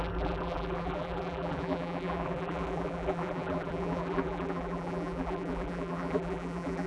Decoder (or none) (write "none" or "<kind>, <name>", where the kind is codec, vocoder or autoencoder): vocoder, BigVGAN v2